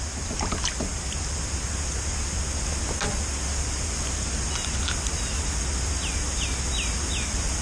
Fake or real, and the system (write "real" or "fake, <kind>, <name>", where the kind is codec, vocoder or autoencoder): real